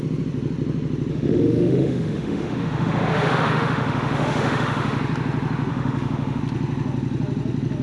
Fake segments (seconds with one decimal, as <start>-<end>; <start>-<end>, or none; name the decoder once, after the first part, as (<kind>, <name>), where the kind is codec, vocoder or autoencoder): 1.1-5.0 (autoencoder, DAC-VAE); 5.7-6.4